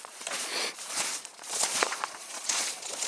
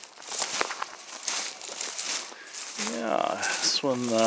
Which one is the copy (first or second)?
first